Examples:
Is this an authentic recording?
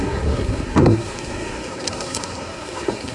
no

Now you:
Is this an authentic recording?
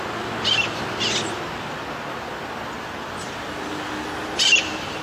yes